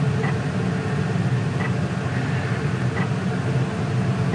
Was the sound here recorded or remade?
recorded